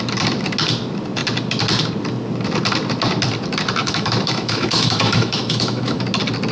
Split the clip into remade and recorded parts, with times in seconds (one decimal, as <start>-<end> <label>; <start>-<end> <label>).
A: 0.0-3.8 recorded; 3.8-6.0 remade; 6.0-6.5 recorded